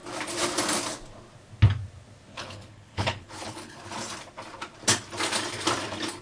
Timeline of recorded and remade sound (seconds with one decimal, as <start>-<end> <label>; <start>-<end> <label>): 0.0-2.3 recorded; 2.3-3.8 remade; 3.8-6.2 recorded